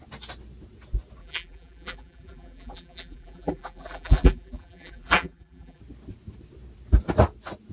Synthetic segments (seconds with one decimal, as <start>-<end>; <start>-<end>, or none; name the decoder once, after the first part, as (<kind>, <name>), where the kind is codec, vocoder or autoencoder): 1.2-5.8 (vocoder, BigVGAN v2)